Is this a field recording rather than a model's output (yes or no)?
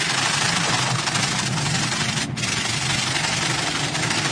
yes